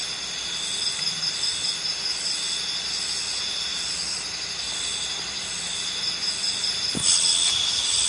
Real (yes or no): yes